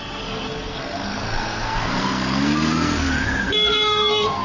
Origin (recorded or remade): remade